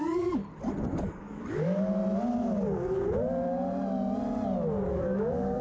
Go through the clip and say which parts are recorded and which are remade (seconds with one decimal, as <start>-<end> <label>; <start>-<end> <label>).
0.0-0.4 remade; 0.4-1.0 recorded; 1.0-2.0 remade; 2.0-4.9 recorded; 4.9-5.6 remade